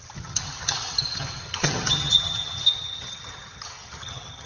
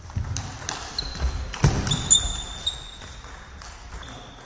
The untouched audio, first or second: second